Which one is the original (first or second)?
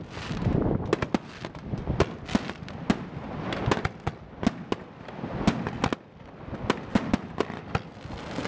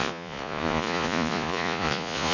first